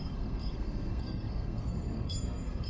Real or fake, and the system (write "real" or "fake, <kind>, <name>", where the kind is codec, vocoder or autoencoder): fake, codec, SNAC